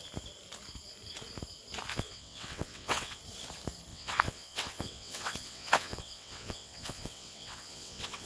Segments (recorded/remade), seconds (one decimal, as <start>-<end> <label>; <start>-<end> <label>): 0.0-1.9 recorded; 1.9-3.2 remade; 3.2-3.9 recorded; 3.9-8.3 remade